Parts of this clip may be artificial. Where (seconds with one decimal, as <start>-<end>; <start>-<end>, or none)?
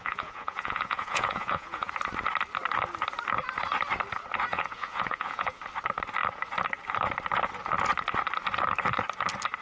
0.0-1.9; 4.5-5.6